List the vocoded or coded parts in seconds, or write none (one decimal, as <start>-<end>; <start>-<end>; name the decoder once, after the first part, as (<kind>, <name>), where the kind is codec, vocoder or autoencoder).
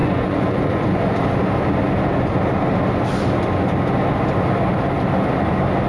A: 0.0-1.2 (vocoder, Vocos)